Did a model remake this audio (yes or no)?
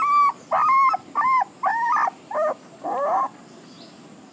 no